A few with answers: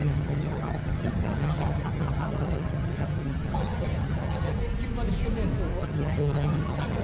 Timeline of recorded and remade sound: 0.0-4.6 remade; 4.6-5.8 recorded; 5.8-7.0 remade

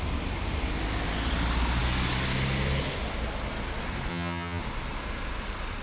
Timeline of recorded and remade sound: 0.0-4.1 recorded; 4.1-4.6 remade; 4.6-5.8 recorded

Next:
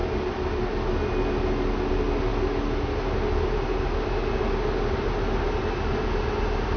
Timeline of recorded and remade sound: 0.0-6.8 recorded